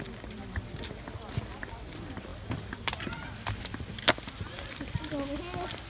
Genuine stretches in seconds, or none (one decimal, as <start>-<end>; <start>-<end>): 0.0-5.9